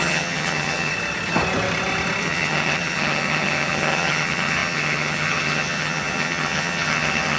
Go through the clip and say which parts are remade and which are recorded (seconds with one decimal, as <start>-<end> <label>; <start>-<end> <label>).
0.0-0.9 remade; 0.9-2.2 recorded; 2.2-7.4 remade